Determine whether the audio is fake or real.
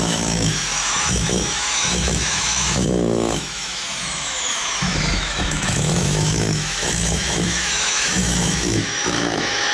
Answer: fake